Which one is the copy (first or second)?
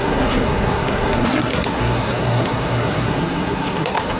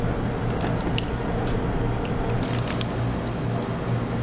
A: first